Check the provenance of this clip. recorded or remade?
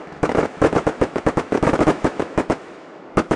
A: remade